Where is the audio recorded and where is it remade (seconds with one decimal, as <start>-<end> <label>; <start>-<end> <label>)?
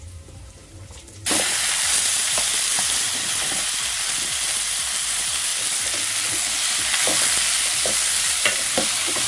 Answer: 0.0-2.5 remade; 2.5-5.0 recorded; 5.0-5.5 remade; 5.5-8.4 recorded; 8.4-9.3 remade